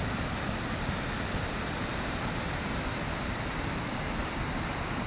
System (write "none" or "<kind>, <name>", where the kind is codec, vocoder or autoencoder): none